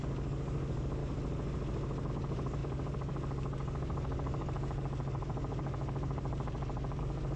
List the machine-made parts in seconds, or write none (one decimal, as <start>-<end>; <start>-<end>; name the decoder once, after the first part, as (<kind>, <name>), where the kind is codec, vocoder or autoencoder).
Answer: 0.0-1.0 (codec, DAC); 2.1-7.4